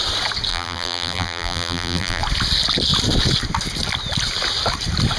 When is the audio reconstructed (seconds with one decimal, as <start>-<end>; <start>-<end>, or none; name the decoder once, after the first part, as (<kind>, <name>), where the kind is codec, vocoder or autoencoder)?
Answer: 0.5-2.2 (vocoder, BigVGAN v2)